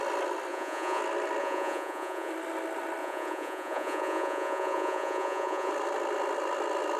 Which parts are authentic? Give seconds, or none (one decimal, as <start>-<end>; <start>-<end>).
0.0-0.5; 1.0-1.4; 2.3-3.0; 5.7-7.0

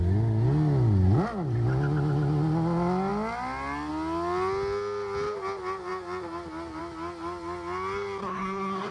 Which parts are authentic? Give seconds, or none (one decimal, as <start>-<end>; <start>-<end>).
0.0-8.2